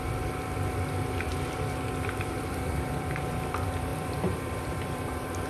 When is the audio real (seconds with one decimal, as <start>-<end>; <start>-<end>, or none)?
1.3-2.0